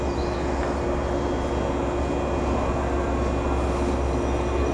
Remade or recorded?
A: recorded